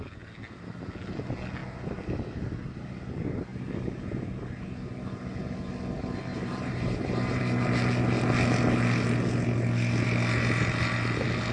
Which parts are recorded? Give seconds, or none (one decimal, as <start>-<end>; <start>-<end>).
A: 0.0-6.3; 7.4-11.5